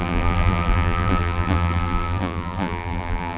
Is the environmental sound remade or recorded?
remade